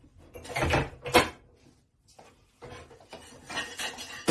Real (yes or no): yes